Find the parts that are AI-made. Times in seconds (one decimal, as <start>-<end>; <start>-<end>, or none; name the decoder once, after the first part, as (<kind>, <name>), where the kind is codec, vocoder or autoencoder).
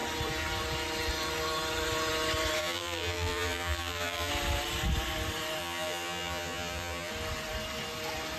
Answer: 2.6-4.3 (vocoder, BigVGAN v2); 5.6-7.1